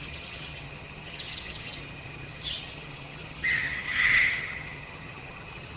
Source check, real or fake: fake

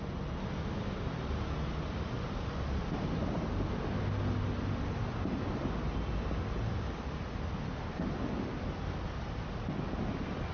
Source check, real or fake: real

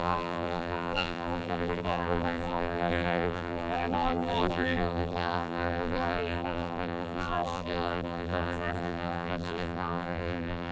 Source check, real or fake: fake